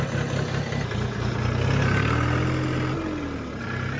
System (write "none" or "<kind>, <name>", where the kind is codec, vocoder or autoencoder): none